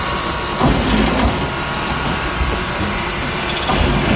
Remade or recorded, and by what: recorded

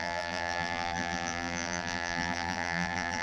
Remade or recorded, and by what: remade, vocoder, BigVGAN v2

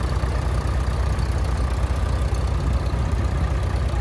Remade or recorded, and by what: recorded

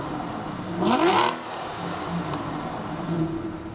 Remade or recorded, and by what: recorded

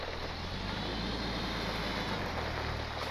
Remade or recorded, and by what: recorded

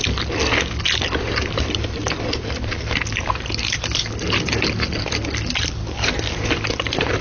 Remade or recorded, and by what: recorded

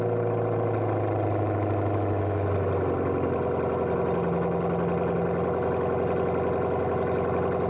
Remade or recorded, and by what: recorded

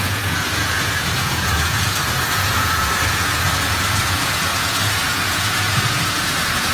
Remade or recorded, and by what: remade, vocoder, Vocos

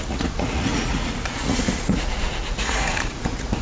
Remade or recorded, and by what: remade, vocoder, Vocos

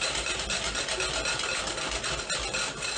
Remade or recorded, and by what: recorded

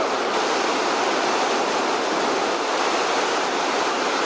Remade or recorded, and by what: recorded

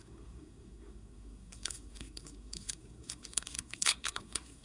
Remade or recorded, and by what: remade, codec, SNAC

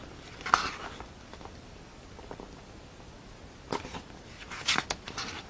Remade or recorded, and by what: remade, vocoder, BigVGAN v2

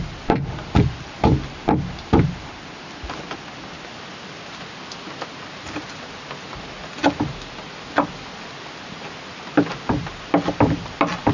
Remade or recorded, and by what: recorded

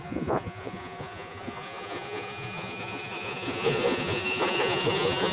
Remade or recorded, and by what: remade, vocoder, Vocos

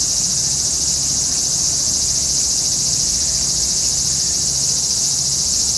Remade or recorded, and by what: recorded